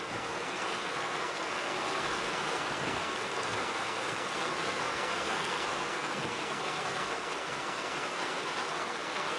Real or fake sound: fake